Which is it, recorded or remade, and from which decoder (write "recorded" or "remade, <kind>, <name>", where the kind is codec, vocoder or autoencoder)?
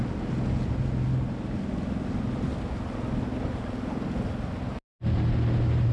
recorded